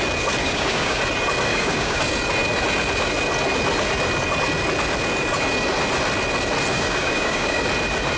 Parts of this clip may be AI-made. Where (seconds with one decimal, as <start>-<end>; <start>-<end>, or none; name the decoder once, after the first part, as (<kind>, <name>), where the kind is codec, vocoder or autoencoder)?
0.4-1.0 (codec, DAC); 1.5-2.0; 6.7-7.6